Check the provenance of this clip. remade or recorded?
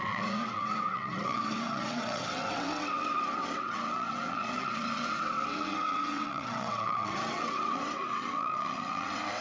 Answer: remade